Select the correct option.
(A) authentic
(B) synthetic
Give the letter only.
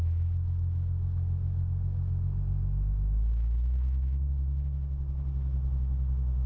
A